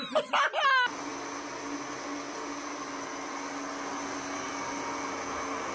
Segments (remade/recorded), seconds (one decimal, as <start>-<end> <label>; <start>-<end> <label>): 0.0-5.7 recorded